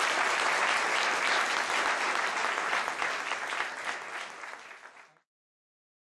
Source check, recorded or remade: recorded